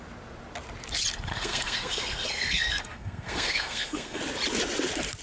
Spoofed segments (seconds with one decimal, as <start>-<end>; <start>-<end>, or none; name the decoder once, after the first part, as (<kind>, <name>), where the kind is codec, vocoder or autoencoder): 1.3-4.2 (codec, SNAC)